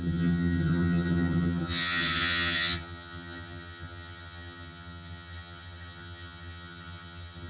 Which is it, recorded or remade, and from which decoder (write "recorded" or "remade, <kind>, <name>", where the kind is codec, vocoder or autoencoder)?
remade, vocoder, HiFi-GAN